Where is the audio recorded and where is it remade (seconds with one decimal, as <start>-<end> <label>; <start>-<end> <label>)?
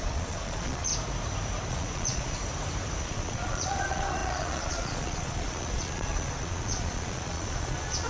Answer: 0.0-0.9 remade; 0.9-1.7 recorded; 1.7-2.4 remade; 2.4-3.0 recorded; 3.0-8.1 remade